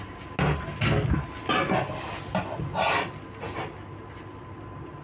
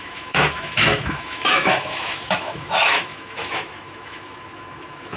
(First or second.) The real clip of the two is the first